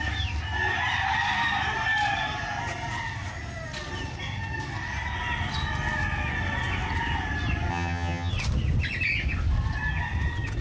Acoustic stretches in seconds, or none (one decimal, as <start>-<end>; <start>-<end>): 0.0-7.7; 8.3-10.6

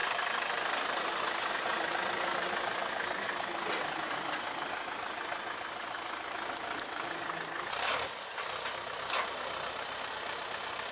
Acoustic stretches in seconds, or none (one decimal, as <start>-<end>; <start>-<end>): 0.0-10.9

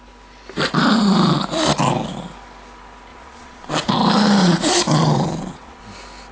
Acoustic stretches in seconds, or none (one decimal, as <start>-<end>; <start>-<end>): 0.0-3.1; 3.9-4.4; 5.8-6.3

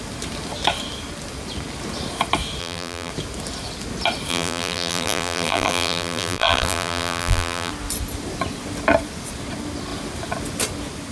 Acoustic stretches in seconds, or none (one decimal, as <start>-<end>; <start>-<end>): 0.0-2.6; 3.1-4.3; 7.7-11.1

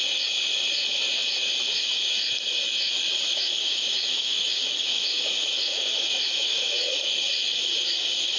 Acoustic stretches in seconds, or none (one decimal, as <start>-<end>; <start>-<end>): 0.0-3.3; 7.1-8.4

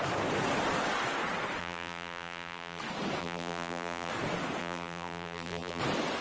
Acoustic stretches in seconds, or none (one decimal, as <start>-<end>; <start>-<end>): 0.0-1.6; 2.8-3.2; 4.1-4.6; 5.8-6.2